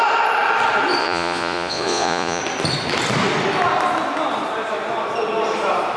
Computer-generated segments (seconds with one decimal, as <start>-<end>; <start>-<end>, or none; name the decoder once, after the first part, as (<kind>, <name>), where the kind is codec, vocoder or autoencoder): 1.0-2.4 (vocoder, Vocos)